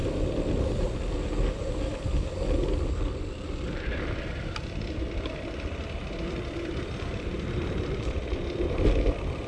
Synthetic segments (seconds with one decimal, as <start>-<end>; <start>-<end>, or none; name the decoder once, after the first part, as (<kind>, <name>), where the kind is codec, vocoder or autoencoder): 2.9-9.5 (vocoder, BigVGAN v2)